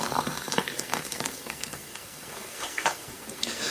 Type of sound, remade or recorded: remade